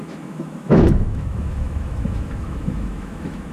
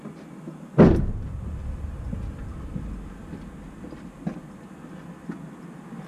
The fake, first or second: first